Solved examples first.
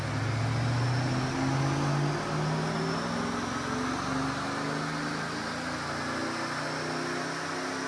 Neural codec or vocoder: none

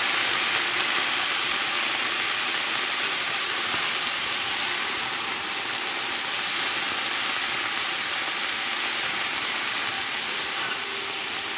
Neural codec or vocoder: none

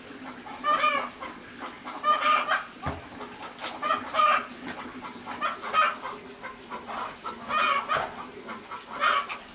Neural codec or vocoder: none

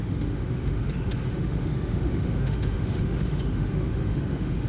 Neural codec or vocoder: autoencoder, DAC-VAE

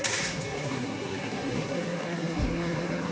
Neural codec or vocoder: codec, SNAC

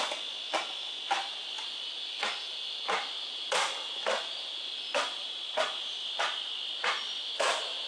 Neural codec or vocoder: none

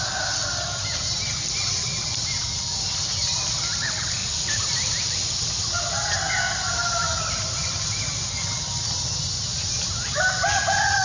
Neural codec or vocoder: none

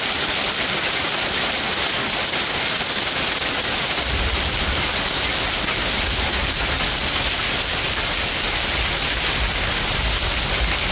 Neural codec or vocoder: none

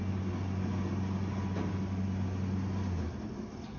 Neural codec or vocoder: none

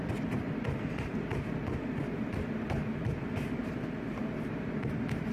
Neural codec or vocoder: vocoder, BigVGAN v2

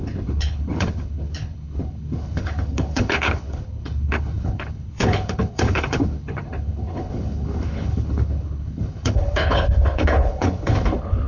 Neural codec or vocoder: codec, HILCodec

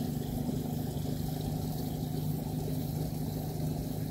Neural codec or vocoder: none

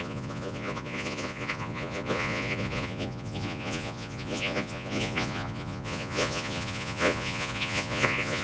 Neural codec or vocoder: vocoder, Vocos